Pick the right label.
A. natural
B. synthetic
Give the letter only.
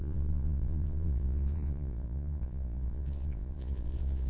B